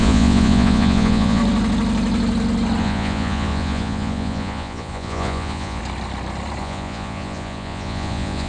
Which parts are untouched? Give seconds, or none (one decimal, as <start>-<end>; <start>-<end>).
1.4-2.8; 5.8-6.6